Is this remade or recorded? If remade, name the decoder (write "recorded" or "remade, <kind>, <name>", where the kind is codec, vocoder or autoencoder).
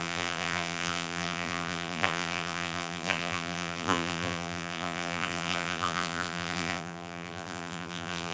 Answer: remade, vocoder, BigVGAN v2